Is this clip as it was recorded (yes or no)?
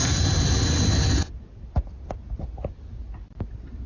yes